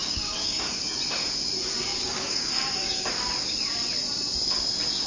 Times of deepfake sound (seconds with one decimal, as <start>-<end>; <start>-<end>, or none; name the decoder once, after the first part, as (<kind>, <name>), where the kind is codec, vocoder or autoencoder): 0.0-0.8 (codec, DAC); 1.9-3.1